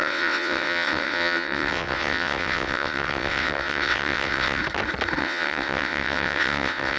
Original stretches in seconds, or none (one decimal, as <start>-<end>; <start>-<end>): 4.6-5.2